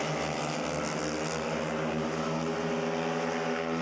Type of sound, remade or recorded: recorded